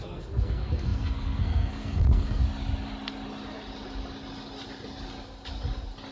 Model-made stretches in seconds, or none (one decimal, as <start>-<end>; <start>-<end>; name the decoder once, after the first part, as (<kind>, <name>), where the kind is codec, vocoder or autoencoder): 0.0-2.4 (codec, SNAC)